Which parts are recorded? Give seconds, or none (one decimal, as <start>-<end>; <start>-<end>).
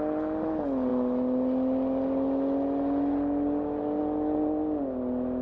0.0-5.4